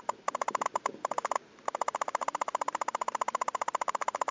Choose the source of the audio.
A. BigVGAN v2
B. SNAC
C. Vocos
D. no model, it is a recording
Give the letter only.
D